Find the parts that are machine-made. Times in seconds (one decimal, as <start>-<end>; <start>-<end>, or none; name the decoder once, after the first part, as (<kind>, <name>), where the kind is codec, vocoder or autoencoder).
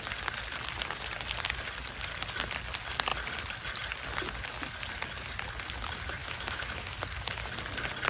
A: 6.2-6.9 (autoencoder, DAC-VAE)